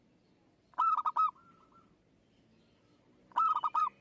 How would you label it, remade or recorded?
recorded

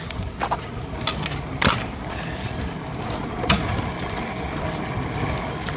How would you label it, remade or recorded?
recorded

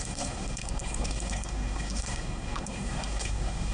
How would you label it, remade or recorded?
remade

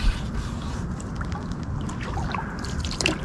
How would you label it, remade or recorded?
remade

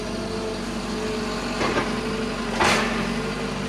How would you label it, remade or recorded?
recorded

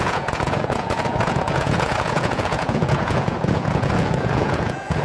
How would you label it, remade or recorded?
remade